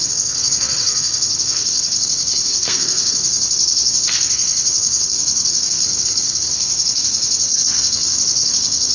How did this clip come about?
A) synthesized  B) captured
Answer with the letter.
A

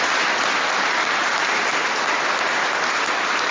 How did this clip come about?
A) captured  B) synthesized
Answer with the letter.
A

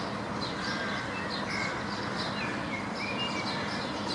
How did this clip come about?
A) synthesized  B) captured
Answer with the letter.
B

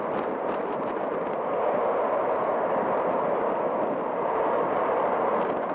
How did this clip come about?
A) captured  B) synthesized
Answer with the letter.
A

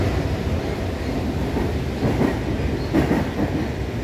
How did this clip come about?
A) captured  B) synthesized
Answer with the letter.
A